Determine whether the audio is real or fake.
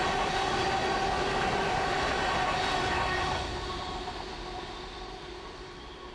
real